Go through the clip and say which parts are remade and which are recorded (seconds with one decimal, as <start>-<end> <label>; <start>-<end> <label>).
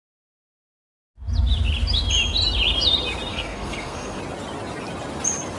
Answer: 0.0-3.3 recorded; 3.3-4.2 remade; 4.2-5.6 recorded